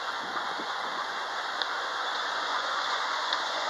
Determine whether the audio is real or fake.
fake